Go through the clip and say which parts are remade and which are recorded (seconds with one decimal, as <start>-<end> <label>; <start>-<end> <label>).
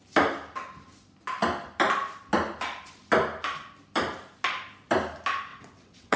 0.0-5.5 recorded; 5.5-6.2 remade